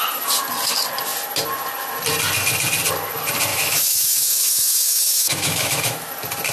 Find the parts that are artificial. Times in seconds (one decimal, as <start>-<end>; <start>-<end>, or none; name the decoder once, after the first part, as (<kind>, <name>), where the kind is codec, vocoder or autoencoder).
3.5-6.1 (autoencoder, DAC-VAE)